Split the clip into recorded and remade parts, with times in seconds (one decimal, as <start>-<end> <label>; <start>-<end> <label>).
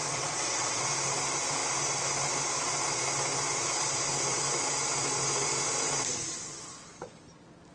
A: 0.0-0.8 remade; 0.8-7.7 recorded